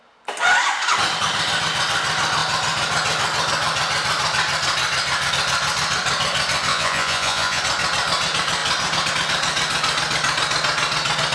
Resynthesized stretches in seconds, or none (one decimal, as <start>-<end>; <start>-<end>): 6.7-7.6